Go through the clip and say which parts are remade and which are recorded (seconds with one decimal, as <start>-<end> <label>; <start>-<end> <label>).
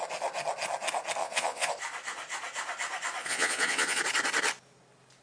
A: 0.0-1.2 recorded; 1.2-1.7 remade; 1.7-3.2 recorded; 3.2-4.0 remade; 4.0-5.2 recorded